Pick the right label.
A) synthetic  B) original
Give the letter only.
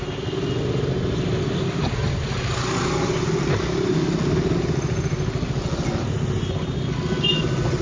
B